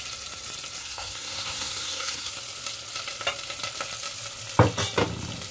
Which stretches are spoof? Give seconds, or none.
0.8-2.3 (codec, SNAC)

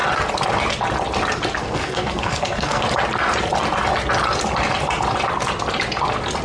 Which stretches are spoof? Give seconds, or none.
1.6-2.8 (codec, SNAC)

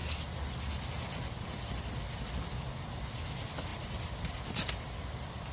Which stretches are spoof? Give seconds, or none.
none

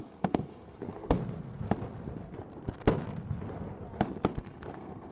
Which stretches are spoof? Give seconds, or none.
0.0-1.2 (codec, SNAC); 4.3-5.1

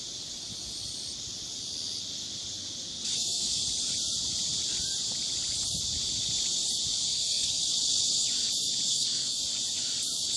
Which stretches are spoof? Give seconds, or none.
3.1-3.6 (codec, SNAC); 7.0-7.6; 8.9-9.4

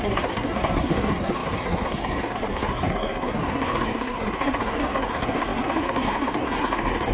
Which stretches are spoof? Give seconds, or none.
0.0-7.1 (codec, SNAC)